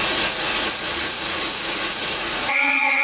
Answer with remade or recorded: remade